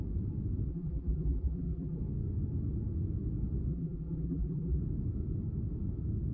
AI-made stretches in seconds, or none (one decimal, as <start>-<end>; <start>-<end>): 0.7-2.0; 3.7-4.8